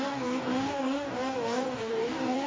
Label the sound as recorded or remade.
remade